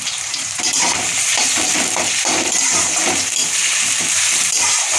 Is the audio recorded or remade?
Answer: remade